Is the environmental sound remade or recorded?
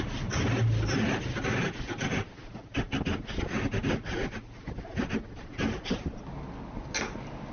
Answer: recorded